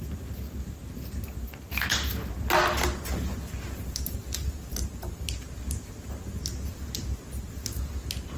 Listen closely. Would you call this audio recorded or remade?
recorded